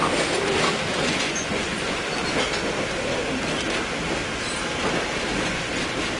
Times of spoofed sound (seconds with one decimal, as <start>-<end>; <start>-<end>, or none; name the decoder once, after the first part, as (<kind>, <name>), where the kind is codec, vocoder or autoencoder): 0.9-2.0 (vocoder, Vocos); 5.3-5.8